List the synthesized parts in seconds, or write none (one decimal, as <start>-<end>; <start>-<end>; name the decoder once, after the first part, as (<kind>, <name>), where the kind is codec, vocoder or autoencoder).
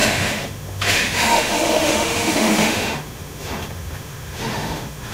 0.0-5.1 (autoencoder, DAC-VAE)